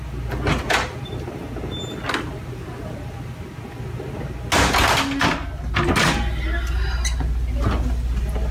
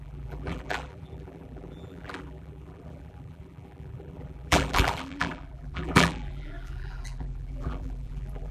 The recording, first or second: first